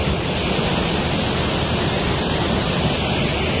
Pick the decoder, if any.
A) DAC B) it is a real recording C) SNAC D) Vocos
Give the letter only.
B